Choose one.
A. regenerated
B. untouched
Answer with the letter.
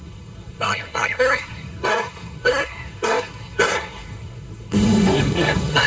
A